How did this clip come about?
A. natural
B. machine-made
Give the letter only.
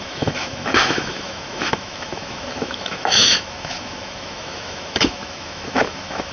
B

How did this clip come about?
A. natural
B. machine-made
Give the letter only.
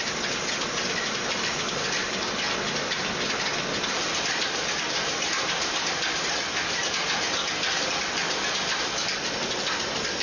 A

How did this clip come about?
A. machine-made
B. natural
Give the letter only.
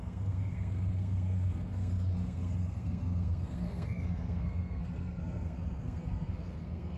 A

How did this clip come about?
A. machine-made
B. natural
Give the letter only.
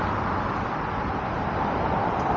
B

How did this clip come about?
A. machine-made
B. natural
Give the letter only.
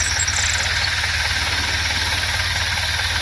B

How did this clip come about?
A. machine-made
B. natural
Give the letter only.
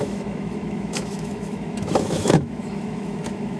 A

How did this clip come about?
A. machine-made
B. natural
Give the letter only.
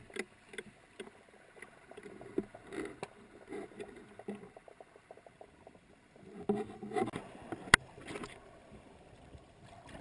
B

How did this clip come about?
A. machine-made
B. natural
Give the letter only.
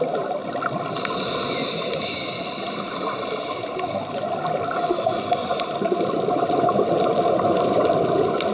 B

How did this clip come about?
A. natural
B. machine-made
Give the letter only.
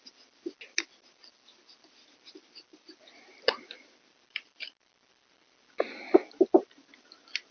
A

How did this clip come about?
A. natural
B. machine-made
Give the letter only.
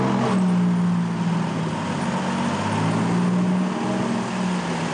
A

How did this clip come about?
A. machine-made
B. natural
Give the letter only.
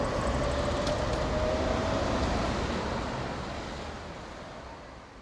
B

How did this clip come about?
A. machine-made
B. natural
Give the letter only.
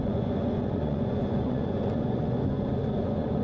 A